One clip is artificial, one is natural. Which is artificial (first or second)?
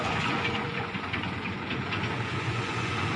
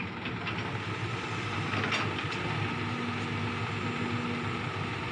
first